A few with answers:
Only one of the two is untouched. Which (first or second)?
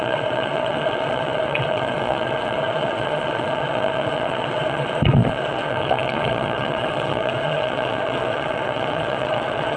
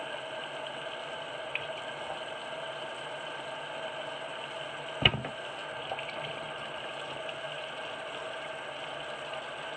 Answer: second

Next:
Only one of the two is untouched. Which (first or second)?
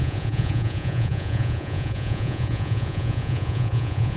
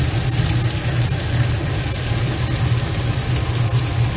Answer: second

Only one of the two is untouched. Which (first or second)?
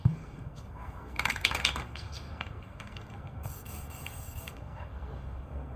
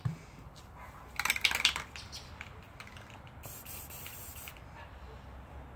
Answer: second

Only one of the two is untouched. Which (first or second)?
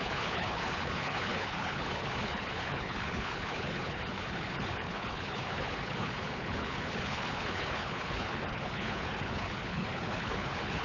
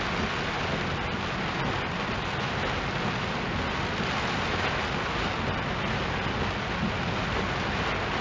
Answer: second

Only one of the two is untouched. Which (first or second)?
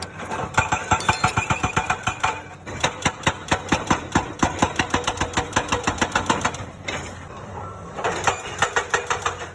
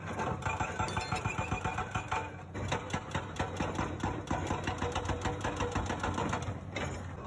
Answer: second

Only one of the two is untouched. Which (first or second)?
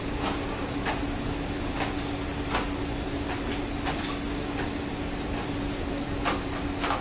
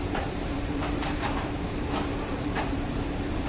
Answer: first